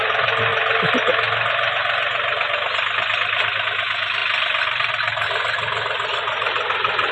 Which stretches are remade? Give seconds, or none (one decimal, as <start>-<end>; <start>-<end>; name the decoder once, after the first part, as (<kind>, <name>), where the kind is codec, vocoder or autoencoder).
none